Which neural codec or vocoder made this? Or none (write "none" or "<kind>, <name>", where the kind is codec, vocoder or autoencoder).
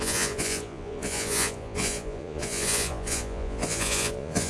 vocoder, Vocos